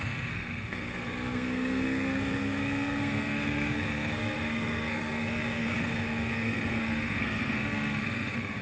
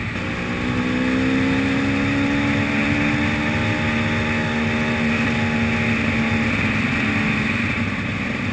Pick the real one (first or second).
second